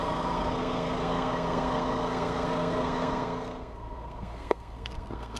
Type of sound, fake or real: fake